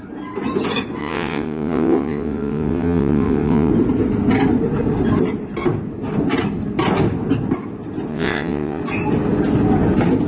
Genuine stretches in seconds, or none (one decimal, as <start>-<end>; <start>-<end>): 0.0-1.0; 3.7-8.1; 8.8-10.3